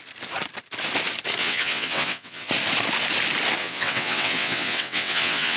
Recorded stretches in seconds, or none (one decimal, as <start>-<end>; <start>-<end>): 0.0-1.4; 2.5-3.6